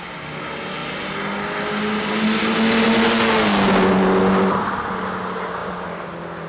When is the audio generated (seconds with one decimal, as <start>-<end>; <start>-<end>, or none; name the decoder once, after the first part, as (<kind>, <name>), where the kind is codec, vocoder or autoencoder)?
none